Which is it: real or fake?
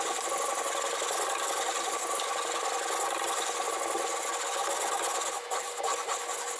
real